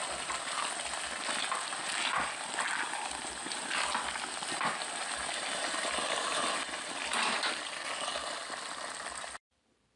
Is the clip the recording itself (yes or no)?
yes